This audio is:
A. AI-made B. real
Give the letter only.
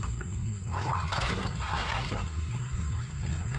A